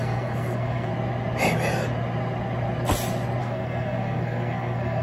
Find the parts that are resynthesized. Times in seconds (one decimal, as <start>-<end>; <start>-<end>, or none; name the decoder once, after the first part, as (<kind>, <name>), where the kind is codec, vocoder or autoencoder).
0.0-0.9 (codec, SNAC); 3.4-5.0